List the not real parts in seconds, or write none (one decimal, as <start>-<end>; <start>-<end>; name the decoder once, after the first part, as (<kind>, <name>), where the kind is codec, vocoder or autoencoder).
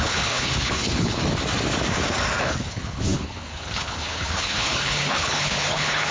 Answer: 0.0-1.2 (codec, HILCodec); 2.4-6.1